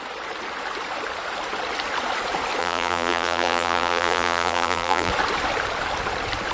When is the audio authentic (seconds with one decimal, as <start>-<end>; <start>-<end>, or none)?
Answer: 0.0-2.6; 5.1-6.5